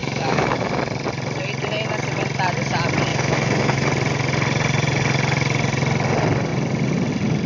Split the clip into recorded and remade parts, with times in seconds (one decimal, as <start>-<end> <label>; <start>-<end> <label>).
0.0-0.8 remade; 0.8-3.1 recorded; 3.1-3.9 remade; 3.9-7.5 recorded